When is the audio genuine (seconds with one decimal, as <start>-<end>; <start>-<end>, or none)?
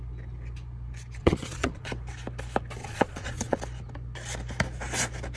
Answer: 0.0-1.2; 1.9-2.8; 3.6-5.4